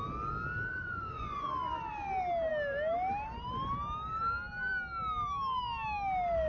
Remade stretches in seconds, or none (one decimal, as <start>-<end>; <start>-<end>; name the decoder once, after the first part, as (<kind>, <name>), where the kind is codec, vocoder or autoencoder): 0.7-1.5 (vocoder, Vocos)